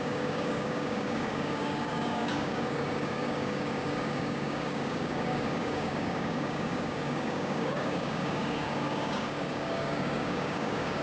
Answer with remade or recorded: remade